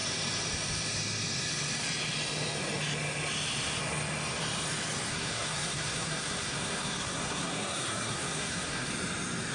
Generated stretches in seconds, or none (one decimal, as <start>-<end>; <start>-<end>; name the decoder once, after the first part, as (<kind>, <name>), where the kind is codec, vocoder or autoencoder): 5.1-8.9 (codec, SNAC)